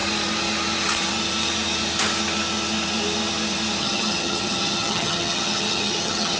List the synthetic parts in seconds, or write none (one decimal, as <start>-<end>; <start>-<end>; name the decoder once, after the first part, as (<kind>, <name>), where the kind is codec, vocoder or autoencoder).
3.8-6.4 (vocoder, HiFi-GAN)